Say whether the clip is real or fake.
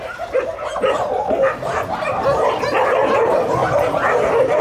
real